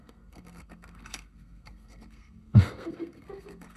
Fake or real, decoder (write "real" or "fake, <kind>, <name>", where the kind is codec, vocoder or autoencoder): fake, codec, SNAC